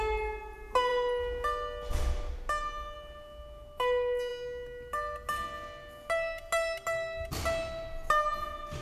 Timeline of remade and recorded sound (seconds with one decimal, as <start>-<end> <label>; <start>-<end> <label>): 0.0-8.8 recorded